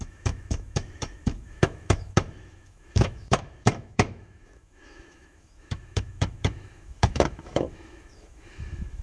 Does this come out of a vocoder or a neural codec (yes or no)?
yes